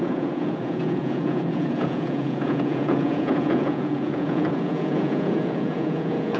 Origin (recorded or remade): remade